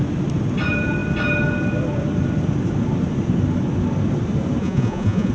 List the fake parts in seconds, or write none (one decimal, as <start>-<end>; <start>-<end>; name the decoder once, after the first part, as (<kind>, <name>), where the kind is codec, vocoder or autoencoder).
4.6-5.3 (vocoder, Vocos)